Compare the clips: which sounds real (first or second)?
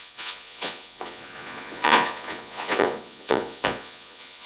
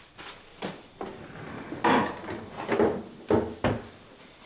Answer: second